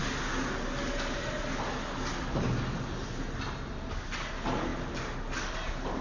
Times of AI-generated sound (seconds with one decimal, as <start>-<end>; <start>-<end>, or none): none